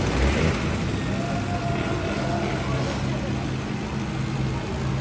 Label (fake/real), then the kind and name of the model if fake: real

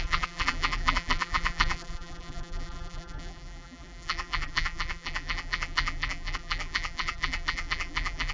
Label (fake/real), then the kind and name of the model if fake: fake, vocoder, BigVGAN v2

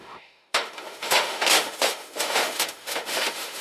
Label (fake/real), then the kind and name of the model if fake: fake, autoencoder, DAC-VAE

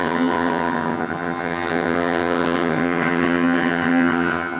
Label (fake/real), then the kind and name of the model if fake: fake, vocoder, HiFi-GAN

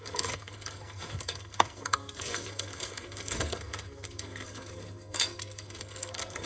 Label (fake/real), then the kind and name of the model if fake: fake, codec, SNAC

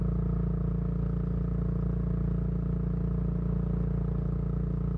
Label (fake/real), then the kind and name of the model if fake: real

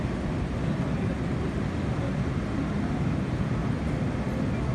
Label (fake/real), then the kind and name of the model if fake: real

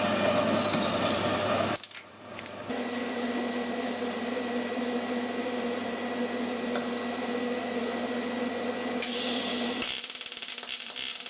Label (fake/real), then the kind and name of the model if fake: fake, vocoder, BigVGAN v2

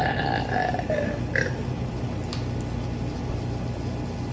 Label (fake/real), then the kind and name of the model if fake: real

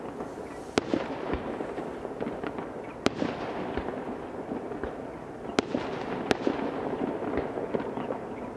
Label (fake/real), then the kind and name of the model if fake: real